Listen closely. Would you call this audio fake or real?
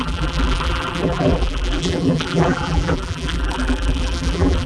fake